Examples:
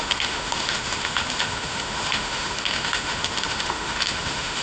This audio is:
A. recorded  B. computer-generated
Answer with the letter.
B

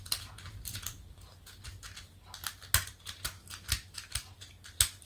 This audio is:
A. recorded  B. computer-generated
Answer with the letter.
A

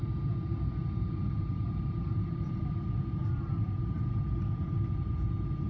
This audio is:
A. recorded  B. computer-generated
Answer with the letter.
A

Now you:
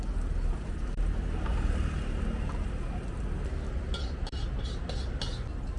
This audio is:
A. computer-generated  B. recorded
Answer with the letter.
B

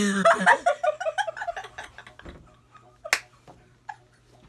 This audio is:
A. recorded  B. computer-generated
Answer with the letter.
A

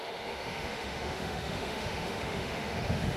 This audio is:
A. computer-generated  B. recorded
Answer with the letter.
A